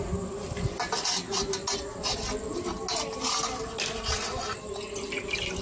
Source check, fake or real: real